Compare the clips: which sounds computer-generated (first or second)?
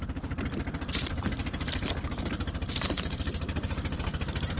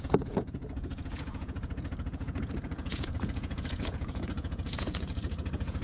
second